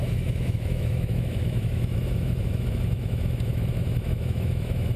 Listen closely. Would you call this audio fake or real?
fake